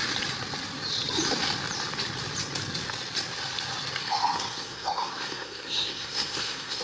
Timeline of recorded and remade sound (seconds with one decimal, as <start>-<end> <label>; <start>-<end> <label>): 0.0-4.0 recorded; 4.0-6.8 remade